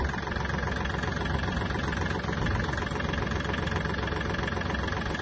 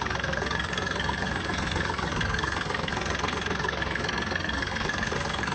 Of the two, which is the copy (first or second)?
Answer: second